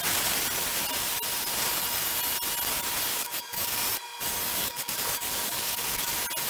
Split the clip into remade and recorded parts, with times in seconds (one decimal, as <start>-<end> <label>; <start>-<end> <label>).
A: 0.0-3.1 recorded; 3.1-3.8 remade; 3.8-4.5 recorded; 4.5-6.1 remade; 6.1-6.5 recorded